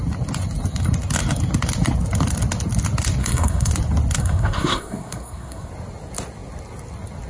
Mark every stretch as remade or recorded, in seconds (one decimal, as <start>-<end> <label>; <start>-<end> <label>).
0.0-3.2 recorded; 3.2-3.7 remade; 3.7-4.2 recorded; 4.2-5.7 remade; 5.7-7.3 recorded